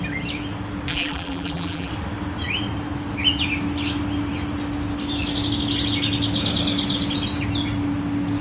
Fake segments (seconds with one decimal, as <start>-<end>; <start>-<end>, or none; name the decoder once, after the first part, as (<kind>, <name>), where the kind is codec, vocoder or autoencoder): 0.9-1.9 (vocoder, BigVGAN v2)

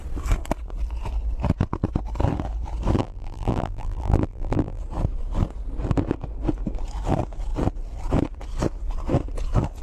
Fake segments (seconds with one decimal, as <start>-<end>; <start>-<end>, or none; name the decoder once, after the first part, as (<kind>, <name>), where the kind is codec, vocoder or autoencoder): 3.0-4.8 (vocoder, BigVGAN v2)

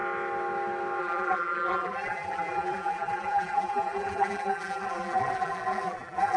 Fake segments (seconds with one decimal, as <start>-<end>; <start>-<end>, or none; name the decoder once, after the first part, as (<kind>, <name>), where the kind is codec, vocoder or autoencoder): 1.0-6.4 (vocoder, BigVGAN v2)

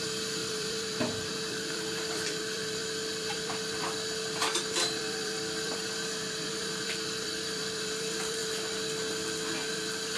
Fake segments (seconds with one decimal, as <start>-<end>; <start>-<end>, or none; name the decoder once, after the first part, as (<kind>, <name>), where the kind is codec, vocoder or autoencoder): 0.0-8.4 (vocoder, BigVGAN v2); 9.7-10.2

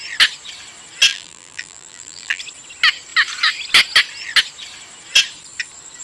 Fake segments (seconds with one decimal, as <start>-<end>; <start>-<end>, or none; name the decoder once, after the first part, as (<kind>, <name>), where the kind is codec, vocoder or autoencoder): 1.1-2.4 (vocoder, BigVGAN v2)

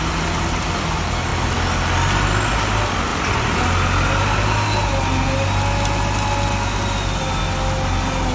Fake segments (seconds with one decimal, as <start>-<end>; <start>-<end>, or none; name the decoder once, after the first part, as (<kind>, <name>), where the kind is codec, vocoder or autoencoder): none

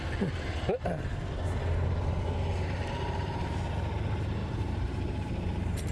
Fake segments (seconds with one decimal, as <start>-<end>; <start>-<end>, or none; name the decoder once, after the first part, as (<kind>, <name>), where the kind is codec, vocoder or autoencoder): 2.8-3.6 (vocoder, BigVGAN v2); 4.4-5.9

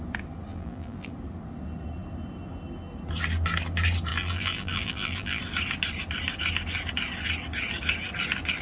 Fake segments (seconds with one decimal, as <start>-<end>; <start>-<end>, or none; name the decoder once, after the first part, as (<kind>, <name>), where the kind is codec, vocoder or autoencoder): 0.5-1.1 (vocoder, BigVGAN v2); 4.1-5.4